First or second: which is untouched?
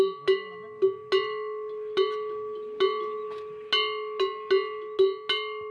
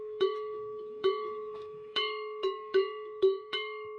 first